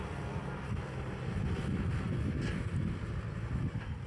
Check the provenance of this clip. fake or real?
real